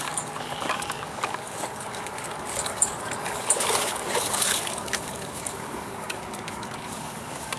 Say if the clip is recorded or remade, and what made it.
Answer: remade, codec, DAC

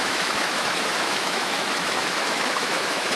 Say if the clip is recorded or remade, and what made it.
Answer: remade, autoencoder, DAC-VAE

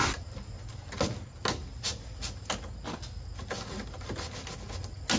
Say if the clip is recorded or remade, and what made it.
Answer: recorded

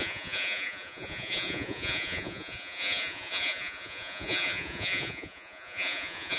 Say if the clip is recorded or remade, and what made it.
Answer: remade, vocoder, Vocos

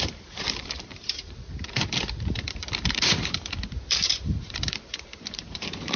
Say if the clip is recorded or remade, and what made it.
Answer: remade, vocoder, BigVGAN v2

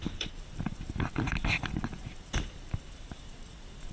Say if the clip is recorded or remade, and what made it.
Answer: recorded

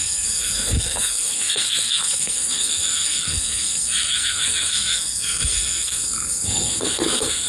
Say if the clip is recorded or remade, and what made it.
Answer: remade, codec, SNAC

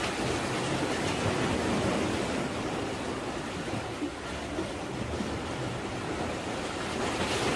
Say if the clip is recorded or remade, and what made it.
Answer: recorded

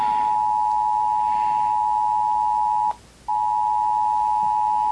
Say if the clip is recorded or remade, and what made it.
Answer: recorded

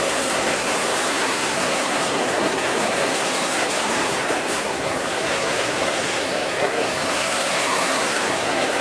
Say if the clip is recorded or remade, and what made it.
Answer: remade, codec, SNAC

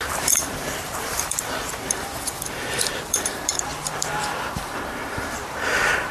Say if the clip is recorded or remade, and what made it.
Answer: remade, vocoder, BigVGAN v2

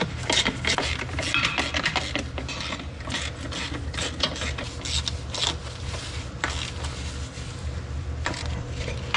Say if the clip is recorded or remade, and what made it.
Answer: recorded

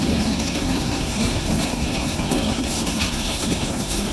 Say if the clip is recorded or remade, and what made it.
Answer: remade, codec, SNAC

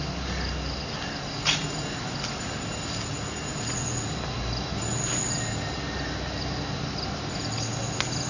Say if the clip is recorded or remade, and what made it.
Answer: recorded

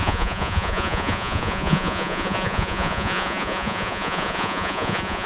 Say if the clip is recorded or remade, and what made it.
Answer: remade, vocoder, Vocos